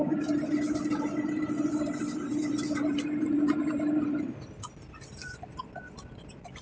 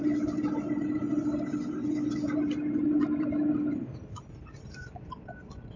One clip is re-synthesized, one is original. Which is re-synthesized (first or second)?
first